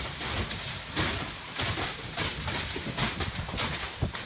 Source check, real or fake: real